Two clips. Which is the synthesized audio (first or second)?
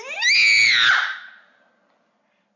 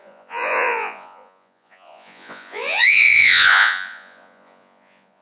second